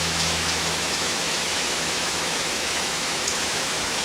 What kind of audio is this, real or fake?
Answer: fake